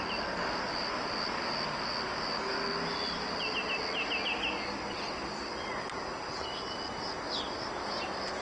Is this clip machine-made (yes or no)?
no